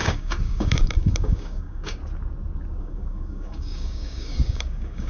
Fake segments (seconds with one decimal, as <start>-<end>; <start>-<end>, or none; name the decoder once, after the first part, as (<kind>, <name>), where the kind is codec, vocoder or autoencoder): 0.0-2.0 (codec, DAC); 2.8-5.1